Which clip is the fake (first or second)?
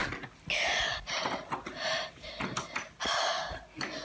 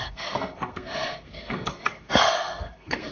second